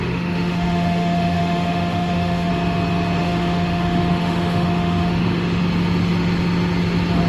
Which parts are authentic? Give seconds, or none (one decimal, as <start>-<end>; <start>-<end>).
2.5-3.2; 5.6-7.3